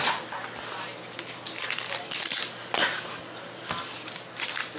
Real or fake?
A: real